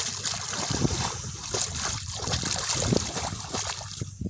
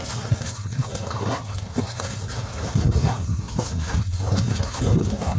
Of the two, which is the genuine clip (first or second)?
first